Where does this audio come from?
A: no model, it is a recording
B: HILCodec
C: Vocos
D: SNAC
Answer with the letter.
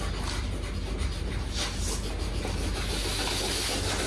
A